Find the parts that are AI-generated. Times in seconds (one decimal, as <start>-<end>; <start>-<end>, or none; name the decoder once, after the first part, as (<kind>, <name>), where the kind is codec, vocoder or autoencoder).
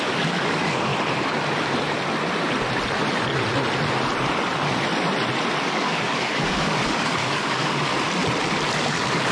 0.0-0.9 (codec, DAC); 5.6-7.9; 8.8-9.3